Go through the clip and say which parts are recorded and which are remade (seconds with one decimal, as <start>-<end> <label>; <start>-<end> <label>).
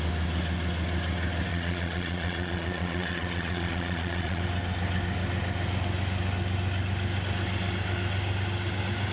0.0-1.5 recorded; 1.5-4.4 remade; 4.4-9.1 recorded